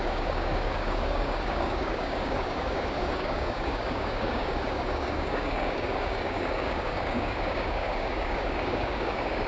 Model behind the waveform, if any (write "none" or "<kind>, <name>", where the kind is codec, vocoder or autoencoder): codec, DAC